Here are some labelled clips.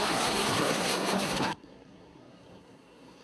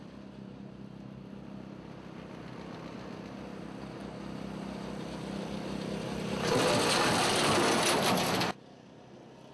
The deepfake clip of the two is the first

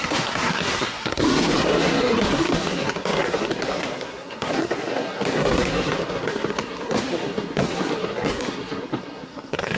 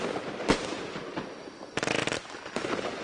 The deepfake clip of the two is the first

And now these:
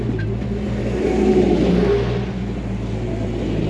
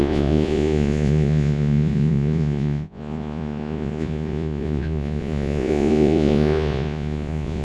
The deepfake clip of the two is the second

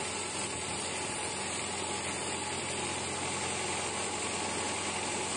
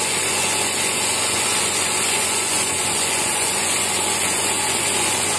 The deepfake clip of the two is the second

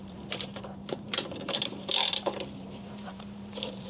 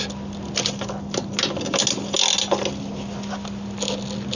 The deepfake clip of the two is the first